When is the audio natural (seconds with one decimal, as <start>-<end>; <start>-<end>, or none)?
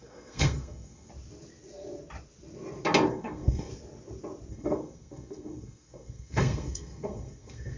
1.1-3.1; 3.7-4.5